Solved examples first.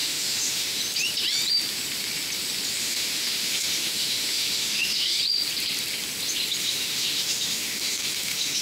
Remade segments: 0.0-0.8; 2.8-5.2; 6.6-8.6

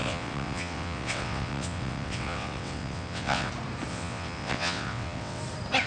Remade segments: 0.0-3.5; 3.9-5.4

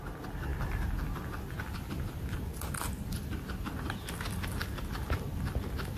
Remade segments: none

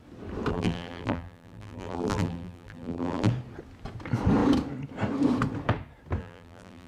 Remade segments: 0.5-3.3; 6.2-6.9

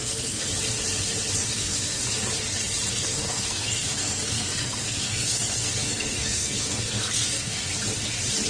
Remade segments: 0.0-0.5; 1.4-2.0; 2.9-7.7